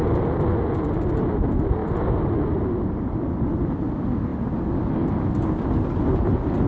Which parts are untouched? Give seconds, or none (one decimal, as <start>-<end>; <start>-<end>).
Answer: 0.0-6.7